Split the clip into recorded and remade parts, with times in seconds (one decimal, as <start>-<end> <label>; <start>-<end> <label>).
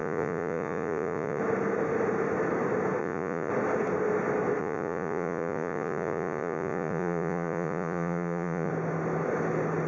0.0-1.4 remade; 1.4-3.0 recorded; 3.0-3.5 remade; 3.5-4.6 recorded; 4.6-8.7 remade; 8.7-9.9 recorded